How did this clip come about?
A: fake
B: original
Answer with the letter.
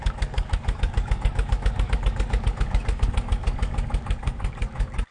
A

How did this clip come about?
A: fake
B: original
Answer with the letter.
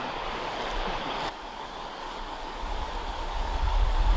A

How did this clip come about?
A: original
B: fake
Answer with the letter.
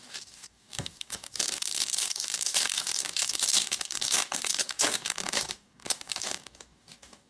B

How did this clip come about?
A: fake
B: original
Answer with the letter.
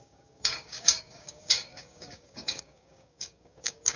A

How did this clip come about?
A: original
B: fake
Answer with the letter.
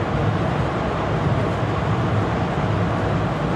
A